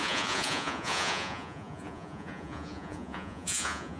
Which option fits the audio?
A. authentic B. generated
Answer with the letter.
B